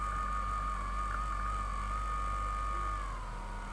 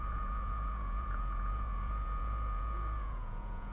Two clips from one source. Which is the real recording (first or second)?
first